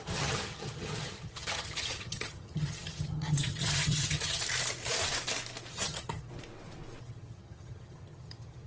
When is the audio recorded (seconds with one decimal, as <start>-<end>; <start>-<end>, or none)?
4.4-5.7; 6.3-7.0